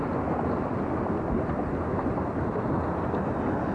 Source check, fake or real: real